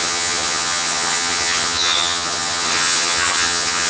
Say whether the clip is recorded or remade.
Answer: remade